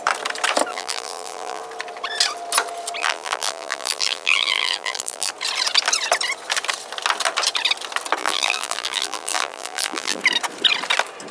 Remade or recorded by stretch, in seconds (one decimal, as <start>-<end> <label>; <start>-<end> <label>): 0.0-0.7 recorded; 0.7-1.6 remade; 1.6-3.0 recorded; 3.0-5.3 remade; 5.3-8.2 recorded; 8.2-10.2 remade; 10.2-11.3 recorded